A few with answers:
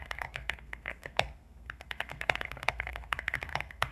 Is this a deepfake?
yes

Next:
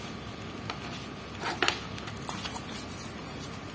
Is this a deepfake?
no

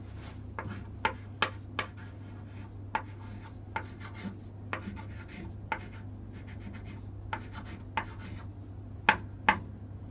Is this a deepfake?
no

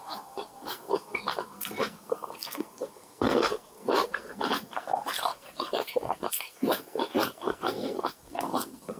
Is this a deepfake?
yes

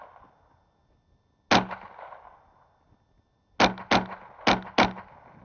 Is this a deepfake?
no